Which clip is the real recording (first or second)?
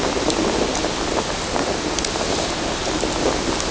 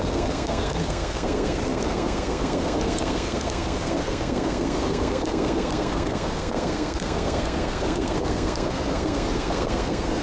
first